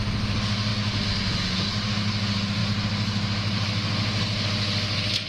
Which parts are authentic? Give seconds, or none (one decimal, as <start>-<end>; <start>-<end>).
0.0-5.3